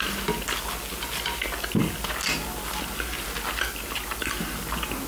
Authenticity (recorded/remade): recorded